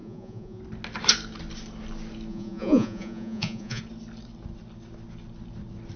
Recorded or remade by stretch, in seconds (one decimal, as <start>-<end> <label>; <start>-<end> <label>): 0.0-0.6 remade; 0.6-2.3 recorded; 2.3-3.8 remade; 3.8-6.0 recorded

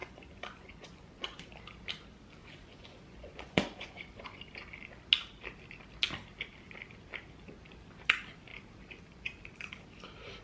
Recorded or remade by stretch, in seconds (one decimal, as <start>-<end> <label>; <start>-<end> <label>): 0.0-1.4 remade; 1.4-2.4 recorded; 2.4-4.4 remade; 4.4-10.4 recorded